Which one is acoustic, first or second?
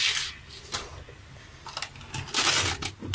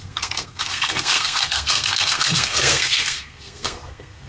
first